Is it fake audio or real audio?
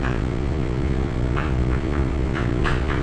fake